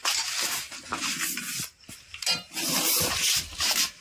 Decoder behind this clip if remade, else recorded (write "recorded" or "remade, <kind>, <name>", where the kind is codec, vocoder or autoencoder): recorded